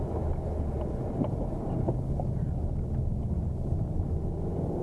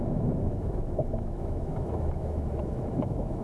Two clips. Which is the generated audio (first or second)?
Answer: second